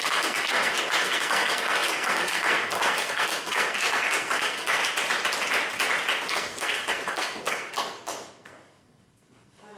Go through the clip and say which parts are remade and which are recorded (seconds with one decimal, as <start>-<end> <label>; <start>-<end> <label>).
0.0-4.8 remade; 4.8-6.3 recorded; 6.3-9.8 remade